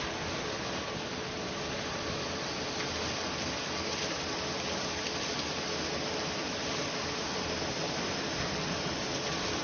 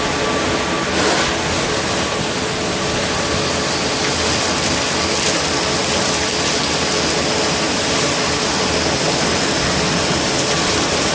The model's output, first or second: first